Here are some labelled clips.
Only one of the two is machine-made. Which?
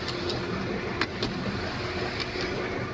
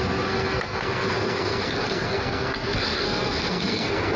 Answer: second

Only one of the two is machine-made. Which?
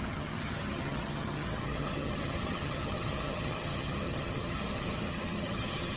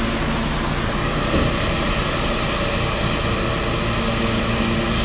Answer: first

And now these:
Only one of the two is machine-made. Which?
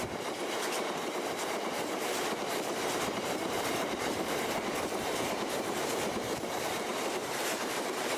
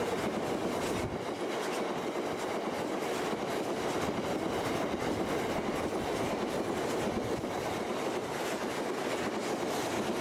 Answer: first